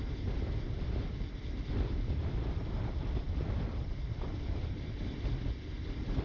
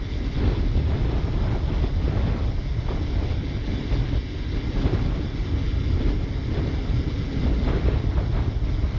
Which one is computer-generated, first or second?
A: first